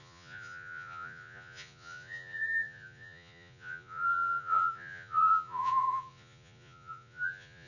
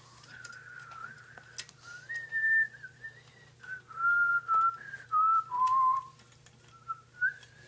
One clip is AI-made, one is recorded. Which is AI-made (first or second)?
first